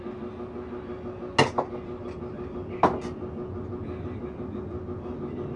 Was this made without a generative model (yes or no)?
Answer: yes